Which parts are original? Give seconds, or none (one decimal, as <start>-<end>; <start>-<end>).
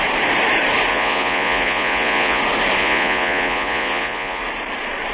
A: 0.0-0.9; 2.4-2.8; 4.4-5.1